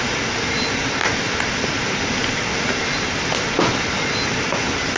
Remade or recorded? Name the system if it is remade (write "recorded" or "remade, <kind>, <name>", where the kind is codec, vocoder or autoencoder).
recorded